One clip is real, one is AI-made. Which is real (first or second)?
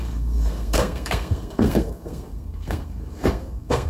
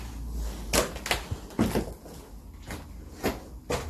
second